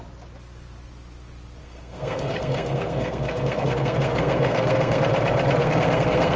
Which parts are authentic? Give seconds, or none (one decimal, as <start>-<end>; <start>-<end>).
0.0-1.6; 5.0-5.6